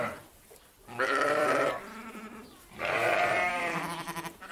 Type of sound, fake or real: fake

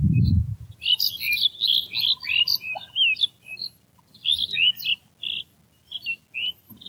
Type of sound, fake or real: real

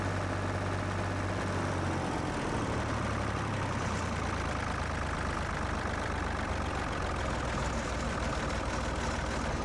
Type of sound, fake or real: fake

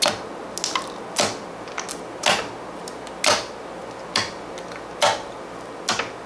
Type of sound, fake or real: real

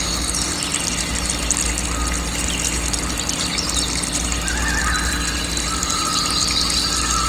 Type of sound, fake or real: real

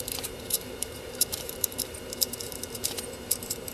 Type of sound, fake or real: fake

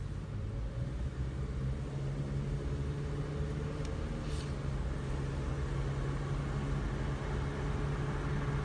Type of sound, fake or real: real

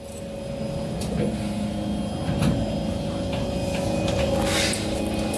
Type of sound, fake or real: real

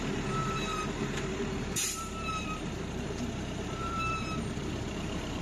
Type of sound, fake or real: fake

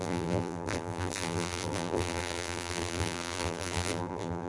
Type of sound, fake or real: fake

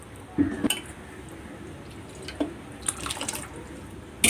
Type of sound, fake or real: real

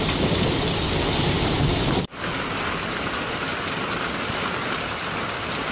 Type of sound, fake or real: real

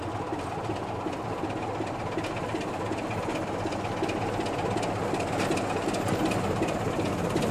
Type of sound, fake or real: real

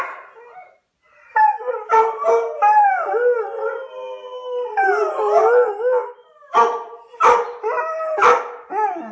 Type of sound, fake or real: real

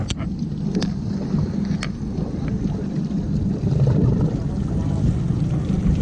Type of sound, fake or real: real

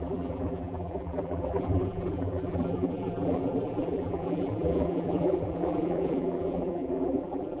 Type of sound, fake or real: fake